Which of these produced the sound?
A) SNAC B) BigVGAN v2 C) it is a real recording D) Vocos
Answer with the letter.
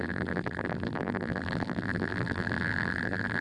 B